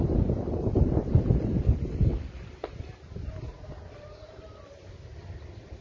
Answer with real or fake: real